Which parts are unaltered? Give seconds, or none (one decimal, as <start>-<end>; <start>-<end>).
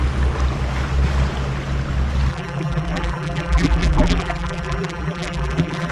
0.0-2.3